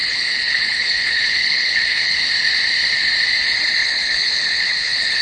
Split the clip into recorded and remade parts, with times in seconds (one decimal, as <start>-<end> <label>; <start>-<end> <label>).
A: 0.0-2.2 remade; 2.2-3.8 recorded; 3.8-5.2 remade